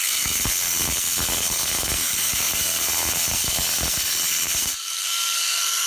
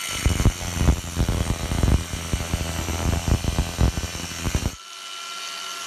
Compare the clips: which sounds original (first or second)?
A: second